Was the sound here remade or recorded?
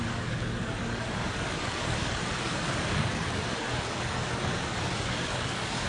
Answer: remade